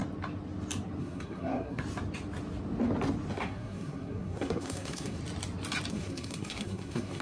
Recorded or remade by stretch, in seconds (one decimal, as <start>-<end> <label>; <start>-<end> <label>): 0.0-1.0 recorded; 1.0-1.8 remade; 1.8-3.4 recorded; 3.4-5.2 remade; 5.2-5.9 recorded; 5.9-7.2 remade